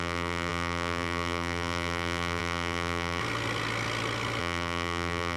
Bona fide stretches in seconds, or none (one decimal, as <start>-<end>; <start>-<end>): 3.2-4.4